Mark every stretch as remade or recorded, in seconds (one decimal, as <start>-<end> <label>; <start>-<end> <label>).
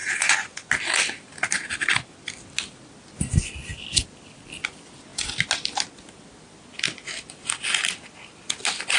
0.0-0.7 remade; 0.7-9.0 recorded